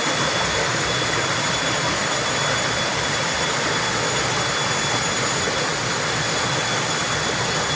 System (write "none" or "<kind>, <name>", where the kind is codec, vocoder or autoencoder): none